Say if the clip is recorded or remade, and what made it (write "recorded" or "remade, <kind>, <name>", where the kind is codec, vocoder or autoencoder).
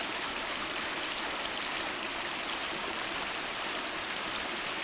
recorded